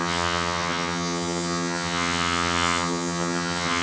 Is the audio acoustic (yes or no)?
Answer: no